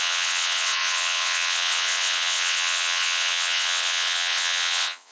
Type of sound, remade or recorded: remade